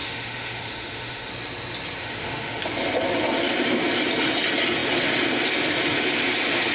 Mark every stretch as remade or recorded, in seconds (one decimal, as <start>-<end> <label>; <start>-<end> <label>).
0.0-1.3 remade; 1.3-2.0 recorded; 2.0-2.6 remade; 2.6-6.7 recorded